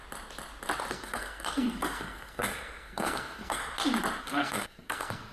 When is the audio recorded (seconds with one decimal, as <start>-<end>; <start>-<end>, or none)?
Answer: 0.0-0.9; 3.6-4.2